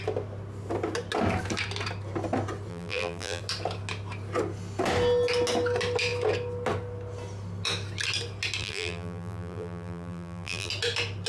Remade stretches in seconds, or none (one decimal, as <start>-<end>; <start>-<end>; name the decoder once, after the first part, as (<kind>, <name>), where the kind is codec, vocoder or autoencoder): 2.7-3.4 (vocoder, BigVGAN v2); 8.6-10.7